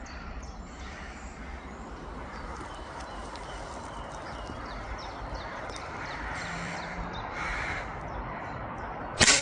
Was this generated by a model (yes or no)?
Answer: yes